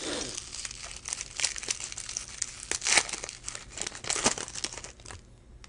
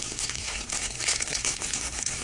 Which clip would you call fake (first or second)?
second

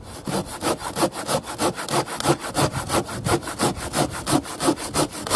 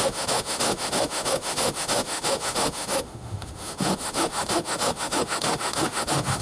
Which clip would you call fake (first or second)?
second